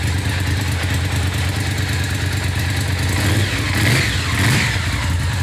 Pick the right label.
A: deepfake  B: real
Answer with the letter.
B